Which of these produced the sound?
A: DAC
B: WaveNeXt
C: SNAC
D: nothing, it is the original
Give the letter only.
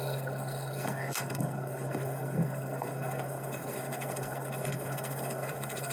C